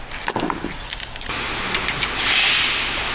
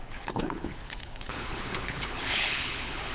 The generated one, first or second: second